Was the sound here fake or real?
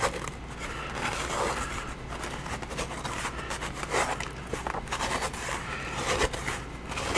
real